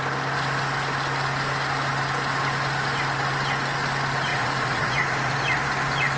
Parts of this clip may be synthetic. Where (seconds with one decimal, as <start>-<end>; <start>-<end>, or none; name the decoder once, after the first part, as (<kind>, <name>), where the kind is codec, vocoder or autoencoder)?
4.3-5.3 (vocoder, Vocos)